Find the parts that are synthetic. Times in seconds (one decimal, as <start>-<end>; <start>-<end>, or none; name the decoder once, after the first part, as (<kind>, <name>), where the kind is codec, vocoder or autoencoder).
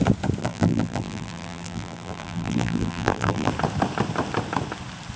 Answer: 0.4-3.5 (vocoder, BigVGAN v2)